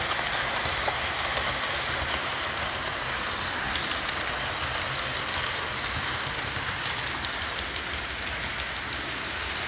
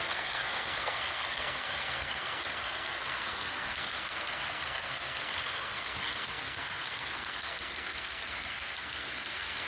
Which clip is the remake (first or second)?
second